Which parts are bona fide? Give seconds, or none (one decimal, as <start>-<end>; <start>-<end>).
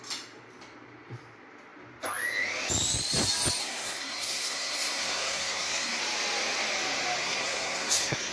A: 0.0-3.6; 6.0-7.2